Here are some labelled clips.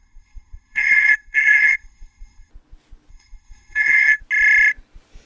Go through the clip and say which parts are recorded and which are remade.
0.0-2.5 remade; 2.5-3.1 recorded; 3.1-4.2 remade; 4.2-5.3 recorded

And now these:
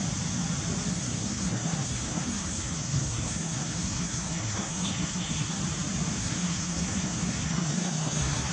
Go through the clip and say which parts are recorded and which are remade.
0.0-0.9 recorded; 0.9-5.6 remade; 5.6-6.2 recorded; 6.2-8.5 remade

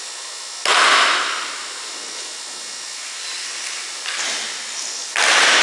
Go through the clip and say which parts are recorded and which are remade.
0.0-5.6 recorded

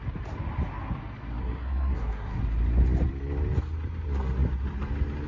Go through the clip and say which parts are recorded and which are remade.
0.0-1.4 recorded; 1.4-2.4 remade; 2.4-5.3 recorded

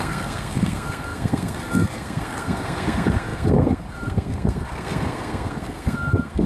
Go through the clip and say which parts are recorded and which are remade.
0.0-6.5 remade

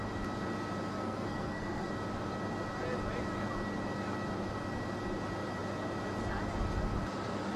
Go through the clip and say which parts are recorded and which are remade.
0.0-0.9 recorded; 0.9-1.9 remade; 1.9-7.6 recorded

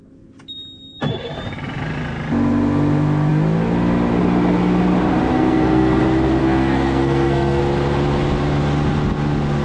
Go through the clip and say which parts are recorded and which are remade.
0.0-5.3 recorded; 5.3-6.0 remade; 6.0-6.4 recorded; 6.4-7.6 remade; 7.6-9.6 recorded